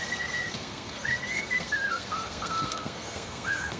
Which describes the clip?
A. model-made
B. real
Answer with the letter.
A